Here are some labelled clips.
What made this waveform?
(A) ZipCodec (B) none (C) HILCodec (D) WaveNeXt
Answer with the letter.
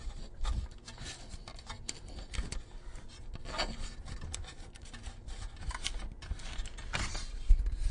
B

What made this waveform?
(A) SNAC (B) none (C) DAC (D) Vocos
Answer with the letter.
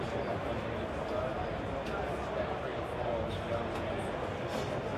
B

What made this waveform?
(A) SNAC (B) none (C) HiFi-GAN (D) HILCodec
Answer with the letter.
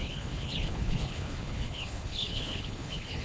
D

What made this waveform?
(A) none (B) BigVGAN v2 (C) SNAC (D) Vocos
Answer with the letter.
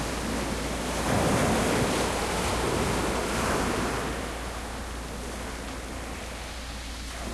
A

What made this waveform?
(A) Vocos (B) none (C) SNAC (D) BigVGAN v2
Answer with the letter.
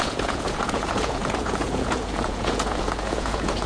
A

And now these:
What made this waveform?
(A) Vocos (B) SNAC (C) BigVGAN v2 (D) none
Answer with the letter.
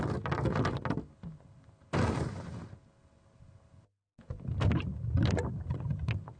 D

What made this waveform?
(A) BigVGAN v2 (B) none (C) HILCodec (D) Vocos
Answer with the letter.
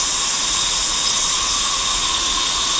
D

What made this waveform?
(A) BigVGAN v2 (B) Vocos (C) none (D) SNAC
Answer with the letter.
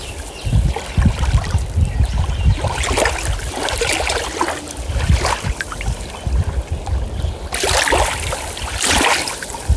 C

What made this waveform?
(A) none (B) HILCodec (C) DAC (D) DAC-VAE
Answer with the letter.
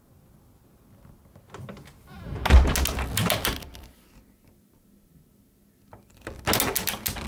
A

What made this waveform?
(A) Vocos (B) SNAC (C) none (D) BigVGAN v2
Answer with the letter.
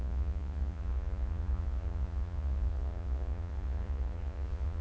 A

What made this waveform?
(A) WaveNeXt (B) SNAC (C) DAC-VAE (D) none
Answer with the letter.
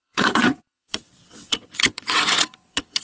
A